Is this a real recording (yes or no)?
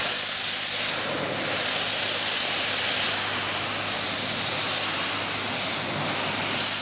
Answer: yes